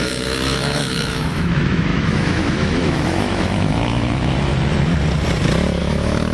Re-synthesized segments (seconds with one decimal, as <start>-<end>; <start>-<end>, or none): 0.0-4.5; 5.8-6.3